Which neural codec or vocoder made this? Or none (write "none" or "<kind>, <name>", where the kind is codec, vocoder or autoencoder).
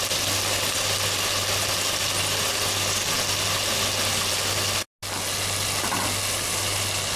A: none